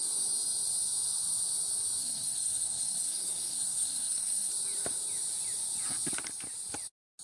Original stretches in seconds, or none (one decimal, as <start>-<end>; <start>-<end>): 0.0-2.0; 4.5-7.2